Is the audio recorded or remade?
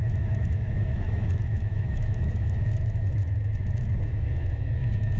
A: remade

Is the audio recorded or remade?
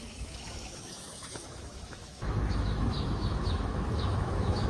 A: remade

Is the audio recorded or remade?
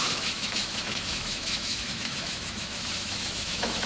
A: remade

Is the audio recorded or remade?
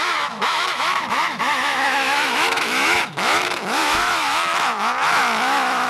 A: remade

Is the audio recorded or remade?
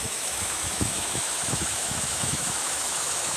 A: remade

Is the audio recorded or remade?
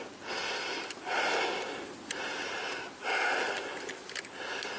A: recorded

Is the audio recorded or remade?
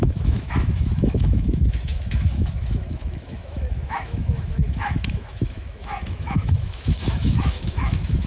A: remade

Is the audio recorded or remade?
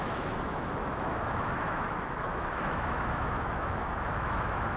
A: remade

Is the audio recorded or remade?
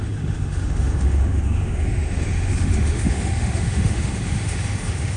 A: remade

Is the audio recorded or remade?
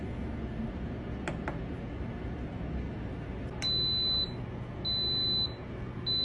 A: recorded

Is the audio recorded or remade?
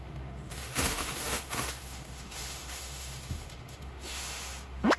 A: remade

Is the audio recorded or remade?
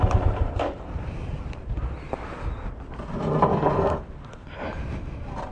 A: recorded